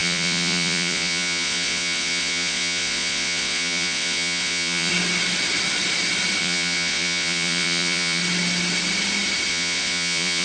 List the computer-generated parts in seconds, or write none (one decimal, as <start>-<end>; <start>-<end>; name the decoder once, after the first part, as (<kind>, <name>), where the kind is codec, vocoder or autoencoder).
0.0-4.9 (vocoder, Vocos); 6.4-8.2; 9.5-10.4